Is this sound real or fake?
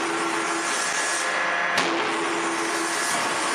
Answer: real